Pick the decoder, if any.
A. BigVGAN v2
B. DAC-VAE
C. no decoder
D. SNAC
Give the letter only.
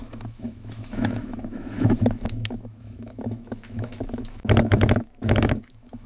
B